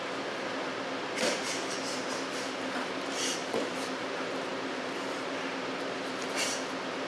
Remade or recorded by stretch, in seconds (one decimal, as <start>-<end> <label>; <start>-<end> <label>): 0.0-7.1 remade